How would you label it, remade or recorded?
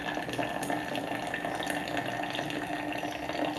recorded